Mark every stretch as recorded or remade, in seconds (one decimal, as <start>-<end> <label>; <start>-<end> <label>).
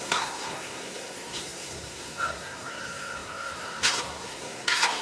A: 0.0-5.0 remade